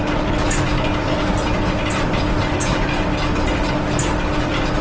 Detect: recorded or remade recorded